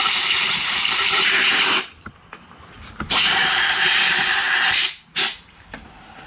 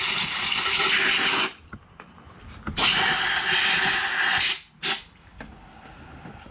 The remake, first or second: first